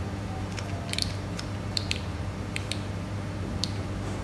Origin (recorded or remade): remade